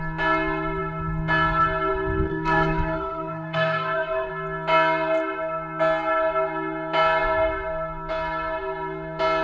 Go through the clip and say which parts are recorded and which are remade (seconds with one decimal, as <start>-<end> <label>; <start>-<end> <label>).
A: 0.0-2.3 recorded; 2.3-4.3 remade; 4.3-9.4 recorded